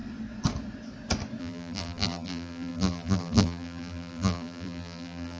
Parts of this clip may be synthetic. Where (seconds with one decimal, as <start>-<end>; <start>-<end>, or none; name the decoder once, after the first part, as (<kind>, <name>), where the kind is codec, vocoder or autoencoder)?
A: 1.4-5.4 (vocoder, BigVGAN v2)